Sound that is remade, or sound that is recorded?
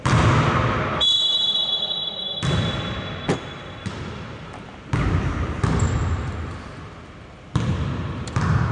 remade